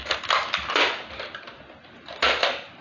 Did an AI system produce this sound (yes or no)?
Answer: no